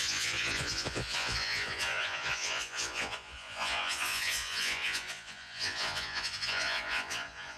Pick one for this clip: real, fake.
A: fake